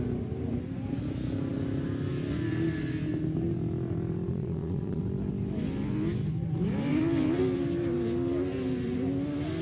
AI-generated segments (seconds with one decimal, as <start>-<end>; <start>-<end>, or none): 4.3-5.0